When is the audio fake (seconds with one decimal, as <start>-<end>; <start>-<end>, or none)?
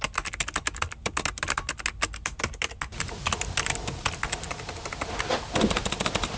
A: none